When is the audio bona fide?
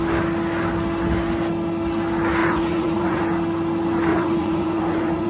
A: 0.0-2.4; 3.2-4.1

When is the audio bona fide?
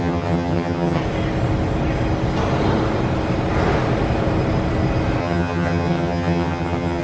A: 1.0-5.2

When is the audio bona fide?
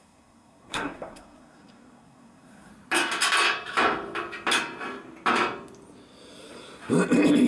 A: 2.7-7.5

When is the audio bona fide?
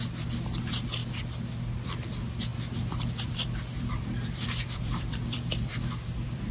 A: 0.0-2.5